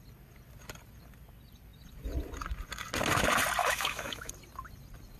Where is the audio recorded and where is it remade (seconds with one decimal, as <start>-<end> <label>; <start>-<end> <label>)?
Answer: 0.0-3.6 recorded; 3.6-4.3 remade; 4.3-5.2 recorded